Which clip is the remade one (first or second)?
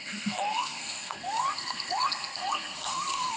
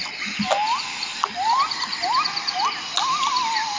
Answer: first